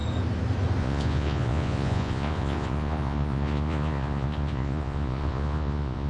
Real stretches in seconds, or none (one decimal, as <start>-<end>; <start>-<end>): 0.0-0.8